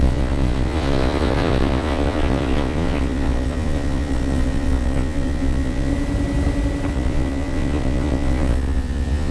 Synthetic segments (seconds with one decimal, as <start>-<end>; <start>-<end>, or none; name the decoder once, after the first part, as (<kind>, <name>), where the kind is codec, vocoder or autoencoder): 0.0-5.9 (vocoder, Vocos); 6.9-9.3